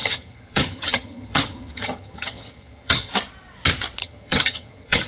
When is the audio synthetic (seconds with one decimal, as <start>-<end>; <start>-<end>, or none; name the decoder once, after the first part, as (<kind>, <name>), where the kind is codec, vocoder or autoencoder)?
0.0-3.1 (vocoder, HiFi-GAN); 4.0-5.1